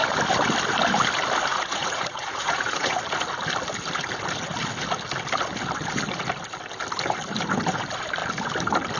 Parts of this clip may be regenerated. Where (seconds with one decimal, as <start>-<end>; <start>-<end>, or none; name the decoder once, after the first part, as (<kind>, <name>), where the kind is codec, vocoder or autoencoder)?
1.5-3.0 (vocoder, Vocos)